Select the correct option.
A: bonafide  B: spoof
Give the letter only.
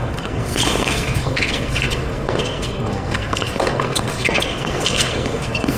B